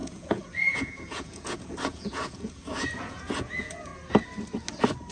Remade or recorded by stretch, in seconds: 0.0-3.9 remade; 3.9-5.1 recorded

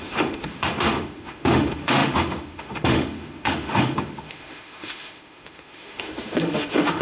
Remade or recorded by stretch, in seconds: 0.0-7.0 remade

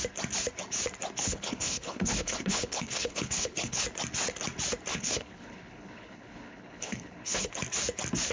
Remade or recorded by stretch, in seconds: 0.0-1.2 recorded; 1.2-3.8 remade; 3.8-4.9 recorded; 4.9-7.5 remade; 7.5-8.3 recorded

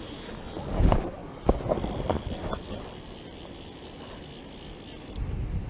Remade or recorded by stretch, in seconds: 0.0-5.7 recorded

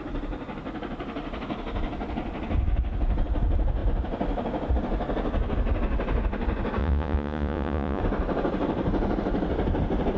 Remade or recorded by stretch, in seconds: 0.0-6.8 recorded; 6.8-8.0 remade; 8.0-10.2 recorded

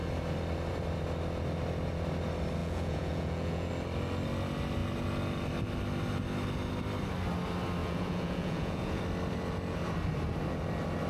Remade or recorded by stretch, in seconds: 0.0-2.6 recorded; 2.6-3.7 remade; 3.7-7.8 recorded; 7.8-9.0 remade; 9.0-11.1 recorded